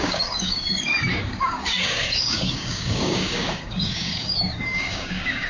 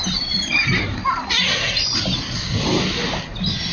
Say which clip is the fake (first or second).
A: first